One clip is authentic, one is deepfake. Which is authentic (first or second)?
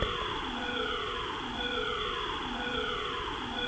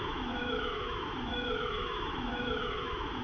first